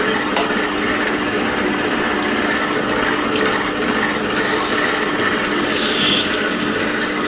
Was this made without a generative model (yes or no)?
yes